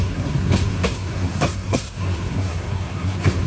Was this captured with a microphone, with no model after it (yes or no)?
no